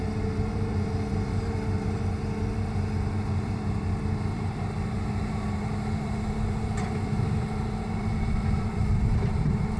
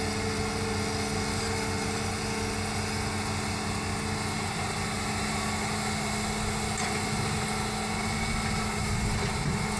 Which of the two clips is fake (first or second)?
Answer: first